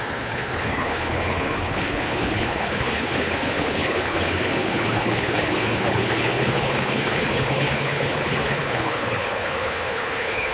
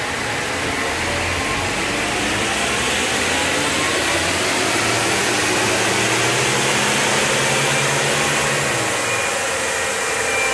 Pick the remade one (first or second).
first